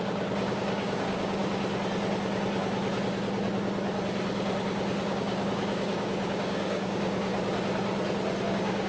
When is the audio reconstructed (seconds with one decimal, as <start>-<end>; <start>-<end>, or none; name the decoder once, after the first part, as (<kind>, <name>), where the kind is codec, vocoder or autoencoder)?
0.0-1.4 (codec, DAC); 5.1-7.3; 8.5-8.9